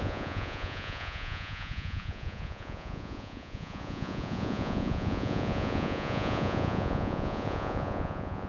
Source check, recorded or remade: remade